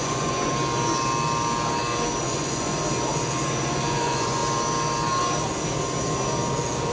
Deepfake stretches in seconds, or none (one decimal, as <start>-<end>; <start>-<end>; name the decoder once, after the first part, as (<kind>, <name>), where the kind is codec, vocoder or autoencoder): 0.0-0.5 (vocoder, Vocos); 2.2-2.7; 3.9-4.4